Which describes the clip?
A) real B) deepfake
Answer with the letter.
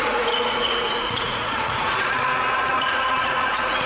B